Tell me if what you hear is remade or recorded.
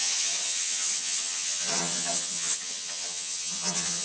remade